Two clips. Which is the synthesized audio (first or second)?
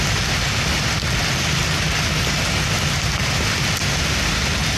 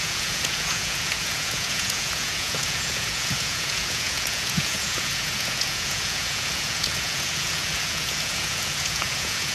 second